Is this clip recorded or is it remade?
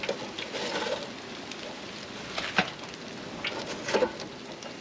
recorded